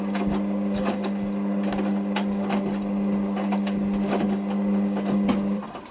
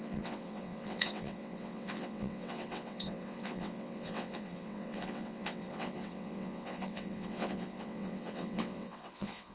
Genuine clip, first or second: first